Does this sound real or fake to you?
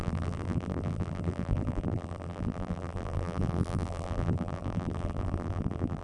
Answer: fake